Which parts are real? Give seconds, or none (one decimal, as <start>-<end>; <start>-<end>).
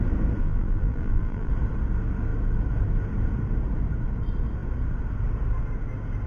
0.0-0.4; 1.5-6.3